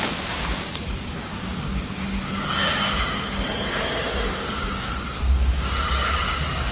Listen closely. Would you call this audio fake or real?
fake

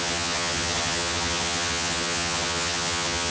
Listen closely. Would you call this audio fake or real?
fake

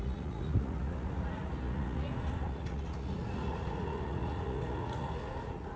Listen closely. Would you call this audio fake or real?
fake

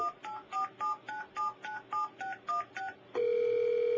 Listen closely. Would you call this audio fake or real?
real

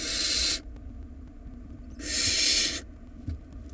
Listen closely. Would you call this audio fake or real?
real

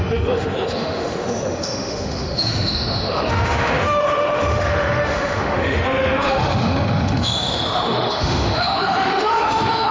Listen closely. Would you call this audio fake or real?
fake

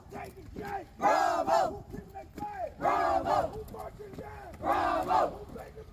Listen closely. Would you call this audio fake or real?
real